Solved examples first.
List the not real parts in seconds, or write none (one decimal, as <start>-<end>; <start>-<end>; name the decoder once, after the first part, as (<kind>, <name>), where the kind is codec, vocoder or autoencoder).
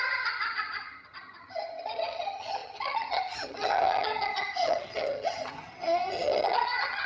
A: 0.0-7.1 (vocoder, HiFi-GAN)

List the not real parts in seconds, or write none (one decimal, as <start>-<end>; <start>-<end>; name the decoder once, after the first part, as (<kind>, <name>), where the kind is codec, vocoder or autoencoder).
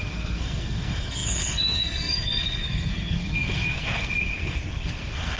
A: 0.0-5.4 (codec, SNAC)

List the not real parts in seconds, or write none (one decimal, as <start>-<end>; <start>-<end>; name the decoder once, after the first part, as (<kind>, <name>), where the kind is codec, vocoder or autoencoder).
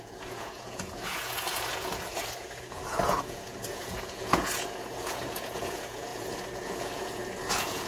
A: 0.0-7.9 (vocoder, Vocos)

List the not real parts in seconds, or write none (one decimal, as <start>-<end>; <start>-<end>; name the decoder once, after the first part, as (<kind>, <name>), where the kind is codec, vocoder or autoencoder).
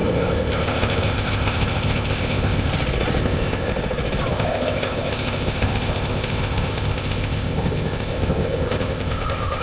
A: 0.0-2.7 (codec, ZipCodec); 3.2-3.7; 4.3-9.6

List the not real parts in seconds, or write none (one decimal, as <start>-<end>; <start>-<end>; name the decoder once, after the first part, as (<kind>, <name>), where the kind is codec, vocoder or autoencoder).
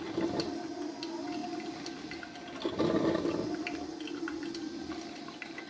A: none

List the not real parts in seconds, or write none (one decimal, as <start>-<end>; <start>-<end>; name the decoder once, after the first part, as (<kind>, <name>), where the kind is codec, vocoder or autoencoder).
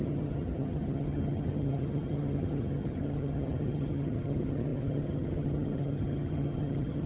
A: 0.0-7.1 (vocoder, HiFi-GAN)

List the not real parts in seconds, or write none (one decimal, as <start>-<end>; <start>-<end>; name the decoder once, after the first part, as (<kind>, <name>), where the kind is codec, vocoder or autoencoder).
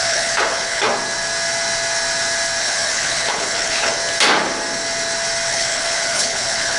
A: 0.0-0.9 (codec, HILCodec); 2.6-3.9; 5.5-6.8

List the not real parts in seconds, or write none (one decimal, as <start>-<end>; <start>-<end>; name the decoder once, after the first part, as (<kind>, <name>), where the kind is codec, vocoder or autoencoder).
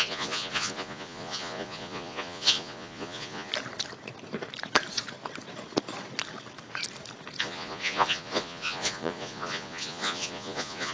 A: 0.0-3.5 (vocoder, Vocos); 7.4-10.9